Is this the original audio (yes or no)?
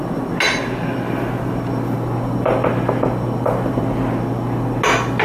yes